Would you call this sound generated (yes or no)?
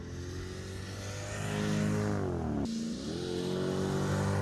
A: no